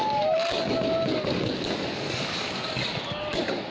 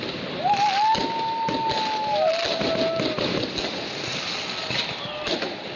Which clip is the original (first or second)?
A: second